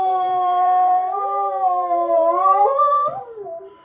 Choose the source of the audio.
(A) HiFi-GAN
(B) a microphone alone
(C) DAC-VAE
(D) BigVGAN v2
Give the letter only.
D